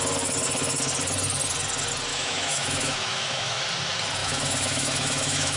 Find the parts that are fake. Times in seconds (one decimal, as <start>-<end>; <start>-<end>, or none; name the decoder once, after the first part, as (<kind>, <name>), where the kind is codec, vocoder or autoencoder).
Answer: 2.1-3.6 (autoencoder, DAC-VAE); 4.2-5.6